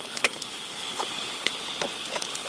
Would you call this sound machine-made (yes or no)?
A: yes